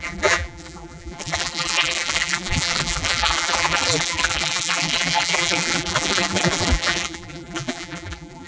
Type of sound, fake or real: fake